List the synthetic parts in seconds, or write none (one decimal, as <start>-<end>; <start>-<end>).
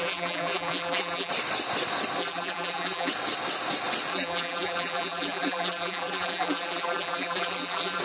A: 0.0-1.3; 2.2-3.1; 4.1-8.0